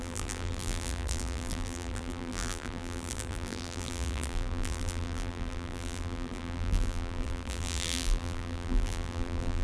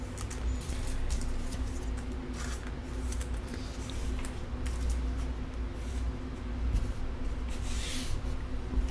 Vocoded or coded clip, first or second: first